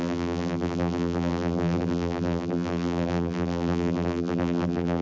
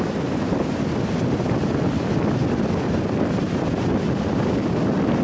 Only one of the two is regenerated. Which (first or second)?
first